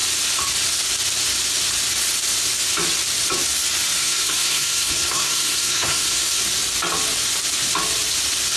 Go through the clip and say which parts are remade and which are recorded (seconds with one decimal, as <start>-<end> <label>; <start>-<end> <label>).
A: 0.0-4.0 recorded; 4.0-6.4 remade; 6.4-8.6 recorded